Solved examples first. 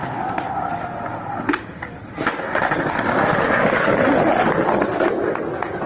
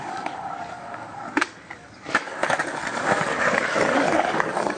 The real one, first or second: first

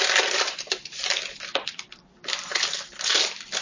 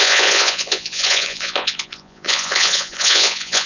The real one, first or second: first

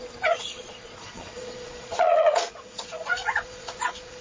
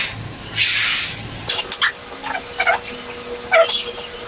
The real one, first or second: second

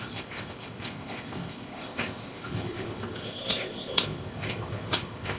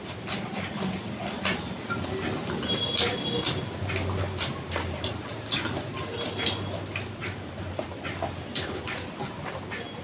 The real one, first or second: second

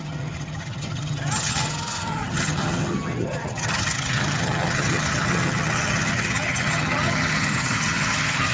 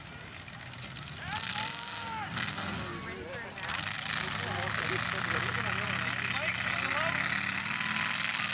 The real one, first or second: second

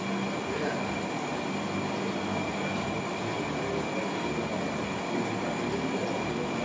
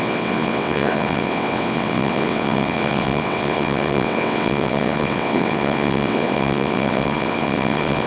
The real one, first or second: first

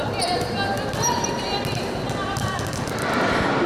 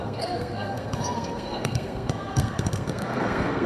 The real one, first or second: first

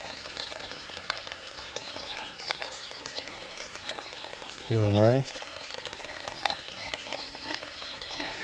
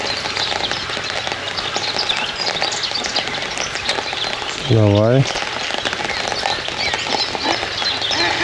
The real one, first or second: second